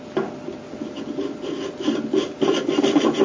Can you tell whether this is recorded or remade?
recorded